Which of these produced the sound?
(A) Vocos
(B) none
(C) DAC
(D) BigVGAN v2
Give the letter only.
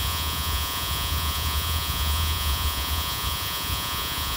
A